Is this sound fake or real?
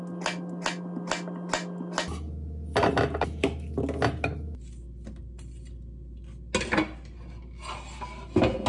real